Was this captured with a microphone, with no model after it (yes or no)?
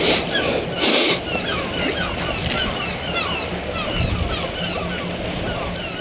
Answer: yes